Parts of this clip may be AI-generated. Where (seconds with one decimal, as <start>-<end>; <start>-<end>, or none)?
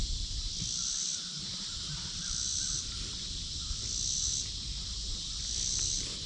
none